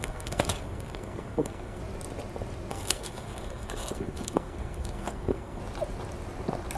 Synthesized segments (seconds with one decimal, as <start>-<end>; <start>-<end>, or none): 0.0-1.8; 2.7-5.6